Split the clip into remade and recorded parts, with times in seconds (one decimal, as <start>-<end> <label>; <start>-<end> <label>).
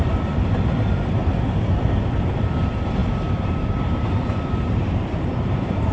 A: 0.0-1.2 remade; 1.2-2.3 recorded; 2.3-5.9 remade